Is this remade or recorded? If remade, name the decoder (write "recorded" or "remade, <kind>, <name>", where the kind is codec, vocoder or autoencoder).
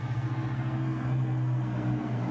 remade, codec, SNAC